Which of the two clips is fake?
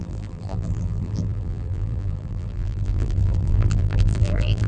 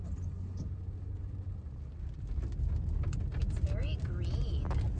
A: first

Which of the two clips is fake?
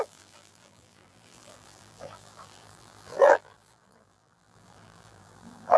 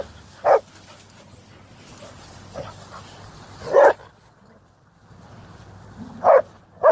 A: first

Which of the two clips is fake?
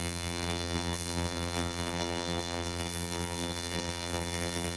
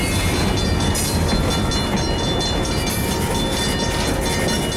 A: first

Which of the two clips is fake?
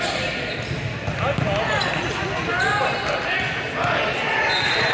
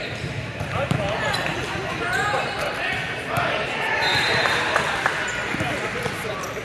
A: second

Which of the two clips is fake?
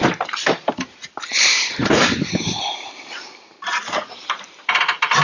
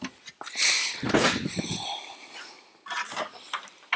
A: first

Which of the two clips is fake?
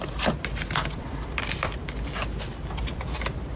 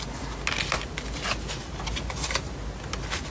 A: first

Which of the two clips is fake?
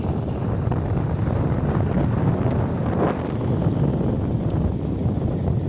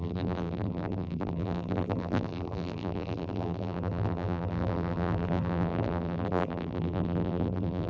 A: second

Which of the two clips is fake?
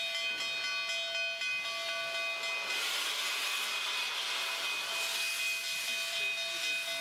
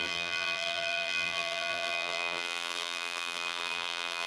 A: second